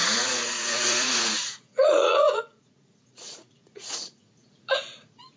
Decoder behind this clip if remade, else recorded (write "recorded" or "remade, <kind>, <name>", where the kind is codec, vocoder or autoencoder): remade, vocoder, Vocos